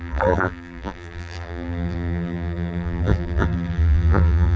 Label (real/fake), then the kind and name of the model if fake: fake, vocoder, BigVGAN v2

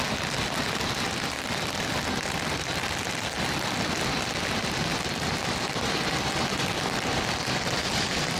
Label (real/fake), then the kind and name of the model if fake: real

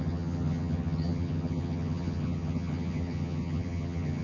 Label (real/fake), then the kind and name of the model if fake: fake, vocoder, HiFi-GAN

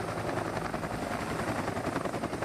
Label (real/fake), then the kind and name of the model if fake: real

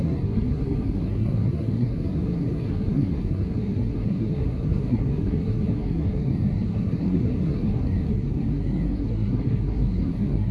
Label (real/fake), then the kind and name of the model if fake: fake, codec, SNAC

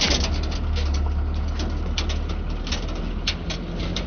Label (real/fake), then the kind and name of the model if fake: real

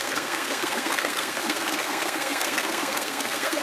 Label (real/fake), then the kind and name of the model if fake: fake, codec, SNAC